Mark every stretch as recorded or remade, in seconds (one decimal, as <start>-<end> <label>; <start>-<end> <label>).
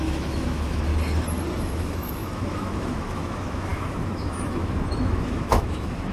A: 0.0-0.9 remade; 0.9-1.6 recorded; 1.6-6.1 remade